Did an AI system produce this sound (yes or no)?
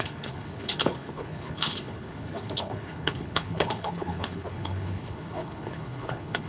yes